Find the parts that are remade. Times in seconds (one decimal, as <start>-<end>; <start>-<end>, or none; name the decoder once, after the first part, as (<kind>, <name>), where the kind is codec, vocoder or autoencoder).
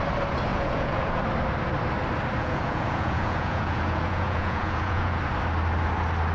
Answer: 0.5-1.2 (vocoder, Vocos); 2.4-5.2